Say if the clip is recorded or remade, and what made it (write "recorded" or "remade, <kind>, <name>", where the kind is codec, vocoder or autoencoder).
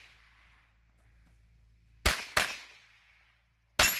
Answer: recorded